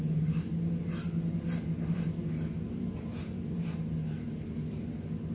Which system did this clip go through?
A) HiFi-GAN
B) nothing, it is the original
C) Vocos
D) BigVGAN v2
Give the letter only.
B